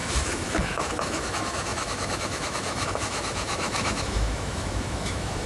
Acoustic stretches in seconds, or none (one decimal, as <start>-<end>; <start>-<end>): none